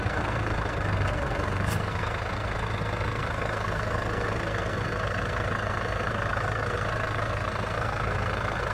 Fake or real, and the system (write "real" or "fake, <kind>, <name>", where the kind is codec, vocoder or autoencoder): fake, codec, SNAC